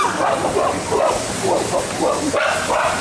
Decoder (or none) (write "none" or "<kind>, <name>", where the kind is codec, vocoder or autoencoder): none